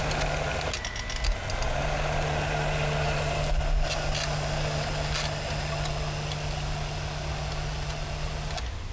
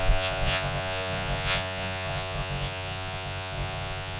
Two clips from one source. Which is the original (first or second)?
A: first